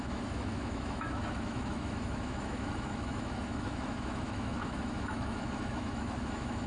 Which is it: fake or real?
fake